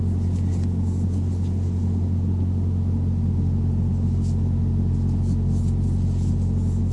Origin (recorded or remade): recorded